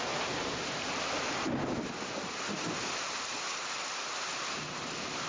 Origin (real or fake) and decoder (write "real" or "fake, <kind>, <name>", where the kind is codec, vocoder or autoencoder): real